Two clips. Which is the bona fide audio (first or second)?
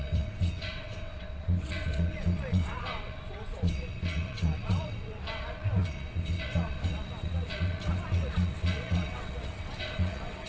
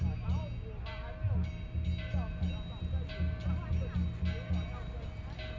second